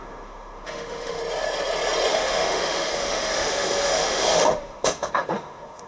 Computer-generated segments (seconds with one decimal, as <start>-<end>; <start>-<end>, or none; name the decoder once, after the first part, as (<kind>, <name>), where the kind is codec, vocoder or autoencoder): 0.0-1.2 (autoencoder, DAC-VAE); 2.1-5.9